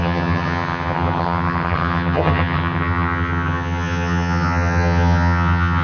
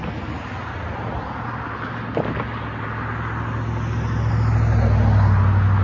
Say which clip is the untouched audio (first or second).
second